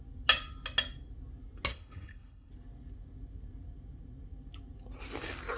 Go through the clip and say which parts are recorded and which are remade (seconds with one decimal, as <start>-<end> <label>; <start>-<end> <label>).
0.0-1.7 recorded; 1.7-2.5 remade; 2.5-5.6 recorded